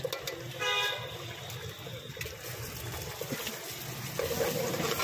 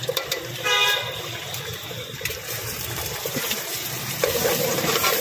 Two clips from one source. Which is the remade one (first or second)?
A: second